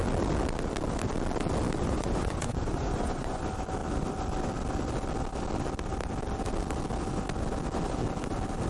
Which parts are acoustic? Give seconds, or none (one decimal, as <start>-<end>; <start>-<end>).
0.0-1.8; 3.4-8.7